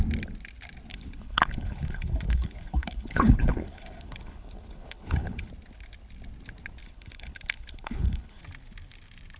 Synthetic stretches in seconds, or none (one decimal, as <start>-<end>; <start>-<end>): 0.9-5.5; 6.8-8.4